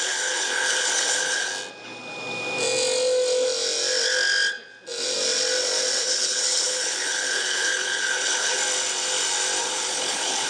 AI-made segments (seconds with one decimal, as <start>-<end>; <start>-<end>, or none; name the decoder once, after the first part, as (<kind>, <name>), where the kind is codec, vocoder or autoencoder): 0.0-1.5 (codec, HILCodec); 6.0-8.6; 9.6-10.5